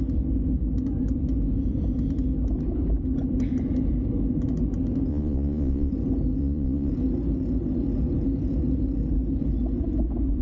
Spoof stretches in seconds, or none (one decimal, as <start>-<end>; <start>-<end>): 5.1-5.9; 6.4-6.9